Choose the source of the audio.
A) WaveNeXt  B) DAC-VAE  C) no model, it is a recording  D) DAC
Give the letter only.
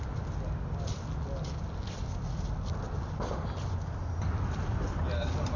C